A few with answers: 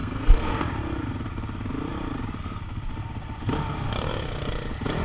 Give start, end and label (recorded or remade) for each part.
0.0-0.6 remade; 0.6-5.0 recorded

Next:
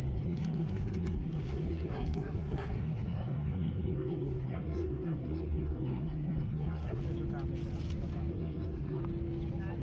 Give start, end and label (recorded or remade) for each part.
0.0-7.0 remade; 7.0-8.3 recorded; 8.3-9.0 remade; 9.0-9.8 recorded

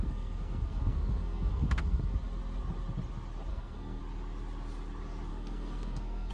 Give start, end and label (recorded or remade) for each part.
0.0-2.1 remade; 2.1-3.5 recorded; 3.5-4.0 remade; 4.0-5.3 recorded; 5.3-6.3 remade

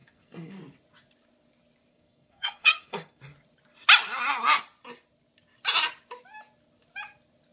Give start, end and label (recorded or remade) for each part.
0.0-0.6 remade; 0.6-1.9 recorded; 1.9-3.2 remade; 3.2-7.5 recorded

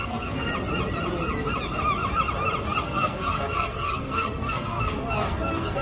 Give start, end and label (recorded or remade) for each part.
0.0-0.5 remade; 0.5-2.8 recorded; 2.8-5.8 remade

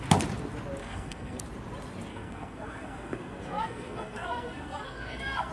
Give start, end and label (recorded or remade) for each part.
0.0-0.8 recorded; 0.8-1.4 remade; 1.4-2.1 recorded; 2.1-5.5 remade